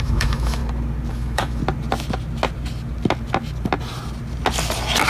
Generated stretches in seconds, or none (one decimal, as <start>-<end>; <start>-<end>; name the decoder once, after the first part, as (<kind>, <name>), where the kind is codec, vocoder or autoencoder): 0.0-0.6 (autoencoder, DAC-VAE); 1.1-1.6